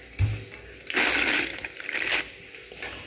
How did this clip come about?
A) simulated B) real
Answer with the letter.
B